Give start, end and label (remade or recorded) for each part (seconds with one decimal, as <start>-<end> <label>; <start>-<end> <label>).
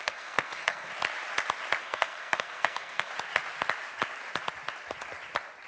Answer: 0.0-0.9 remade; 0.9-1.8 recorded; 1.8-3.1 remade; 3.1-5.7 recorded